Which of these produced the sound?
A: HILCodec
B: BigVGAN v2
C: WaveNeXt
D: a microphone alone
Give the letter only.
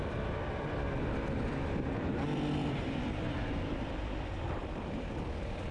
B